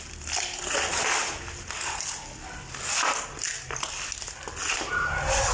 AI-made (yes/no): no